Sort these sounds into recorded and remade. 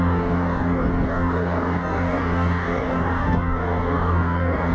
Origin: remade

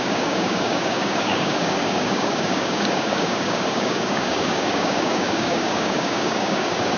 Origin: remade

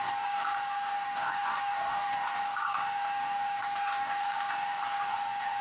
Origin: remade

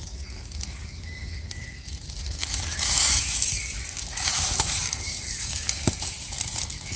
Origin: remade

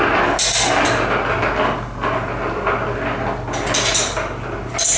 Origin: recorded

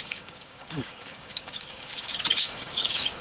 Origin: remade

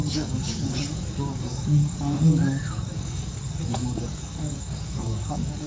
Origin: remade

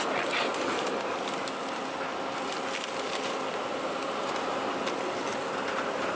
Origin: recorded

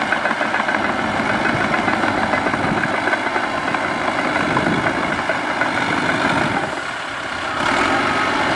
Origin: recorded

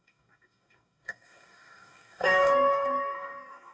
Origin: remade